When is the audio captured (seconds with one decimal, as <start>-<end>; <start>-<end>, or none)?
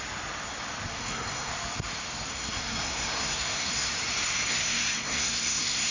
0.0-1.0; 1.5-2.3; 3.9-4.5